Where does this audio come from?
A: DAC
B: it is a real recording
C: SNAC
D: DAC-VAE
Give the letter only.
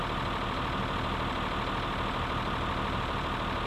B